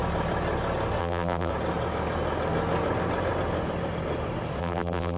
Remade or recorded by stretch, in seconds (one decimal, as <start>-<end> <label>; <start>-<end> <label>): 0.0-1.0 recorded; 1.0-1.5 remade; 1.5-4.6 recorded; 4.6-5.2 remade